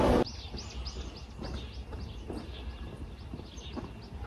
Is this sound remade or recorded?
recorded